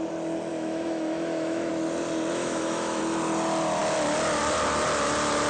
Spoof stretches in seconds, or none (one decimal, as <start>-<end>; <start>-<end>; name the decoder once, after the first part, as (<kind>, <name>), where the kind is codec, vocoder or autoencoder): 0.5-1.7 (autoencoder, DAC-VAE); 2.3-3.0